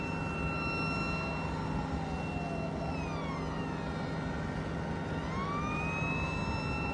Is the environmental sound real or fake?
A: real